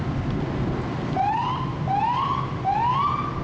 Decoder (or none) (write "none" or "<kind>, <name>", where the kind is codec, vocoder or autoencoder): none